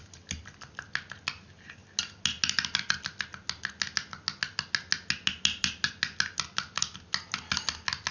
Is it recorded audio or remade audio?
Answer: recorded